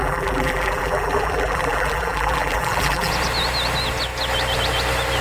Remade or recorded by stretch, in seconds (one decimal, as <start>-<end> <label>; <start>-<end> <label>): 0.0-3.1 remade; 3.1-5.2 recorded